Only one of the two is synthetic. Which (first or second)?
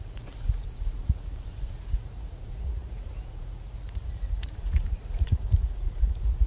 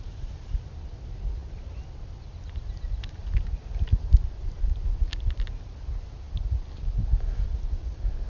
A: first